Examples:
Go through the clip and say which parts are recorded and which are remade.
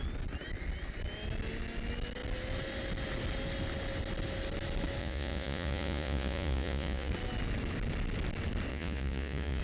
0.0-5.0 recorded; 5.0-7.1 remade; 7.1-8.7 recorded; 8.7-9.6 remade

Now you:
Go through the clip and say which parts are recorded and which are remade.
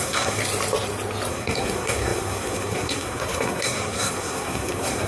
0.0-0.4 remade; 0.4-1.3 recorded; 1.3-5.1 remade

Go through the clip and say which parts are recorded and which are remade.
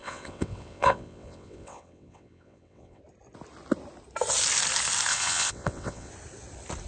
0.0-3.0 remade; 3.0-5.1 recorded; 5.1-6.1 remade; 6.1-6.9 recorded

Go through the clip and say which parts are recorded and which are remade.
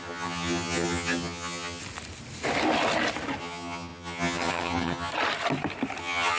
0.0-1.8 remade; 1.8-3.4 recorded; 3.4-5.1 remade; 5.1-6.0 recorded; 6.0-6.4 remade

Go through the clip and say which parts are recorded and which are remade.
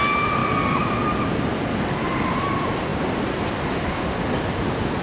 0.0-5.0 recorded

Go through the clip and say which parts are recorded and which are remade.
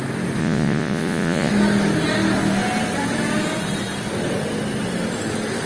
0.0-0.4 recorded; 0.4-1.5 remade; 1.5-5.7 recorded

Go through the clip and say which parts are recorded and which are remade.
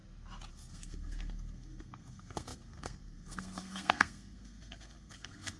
0.0-0.5 recorded; 0.5-5.6 remade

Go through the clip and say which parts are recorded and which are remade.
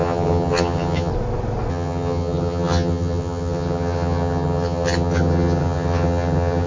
0.0-1.1 remade; 1.1-1.7 recorded; 1.7-6.7 remade